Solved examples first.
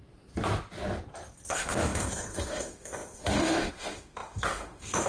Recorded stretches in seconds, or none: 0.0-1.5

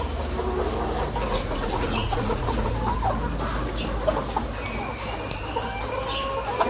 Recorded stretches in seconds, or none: 0.0-1.3; 2.7-6.7

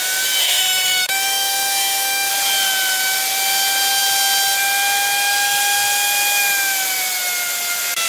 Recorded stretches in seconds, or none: 0.0-0.4; 2.3-8.1

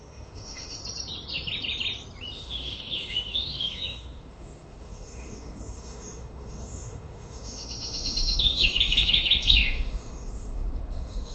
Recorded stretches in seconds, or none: 0.8-2.3

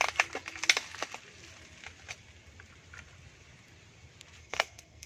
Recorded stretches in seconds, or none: 0.0-4.4

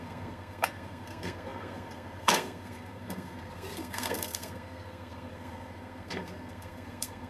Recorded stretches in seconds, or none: none